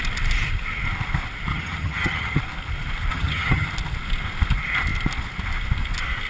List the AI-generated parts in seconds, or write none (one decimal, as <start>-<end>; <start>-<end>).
1.5-2.4; 3.1-3.7